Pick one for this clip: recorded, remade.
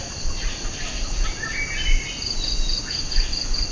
recorded